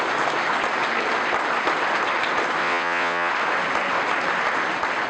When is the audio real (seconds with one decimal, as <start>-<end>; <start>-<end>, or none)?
0.0-2.6; 3.3-5.1